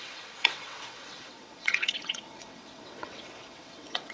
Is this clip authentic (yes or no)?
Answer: no